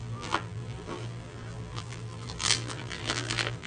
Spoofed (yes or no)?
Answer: yes